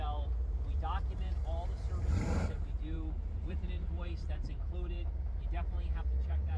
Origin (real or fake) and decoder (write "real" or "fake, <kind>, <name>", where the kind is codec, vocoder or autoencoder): fake, vocoder, BigVGAN v2